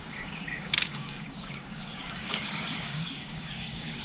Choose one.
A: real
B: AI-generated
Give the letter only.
B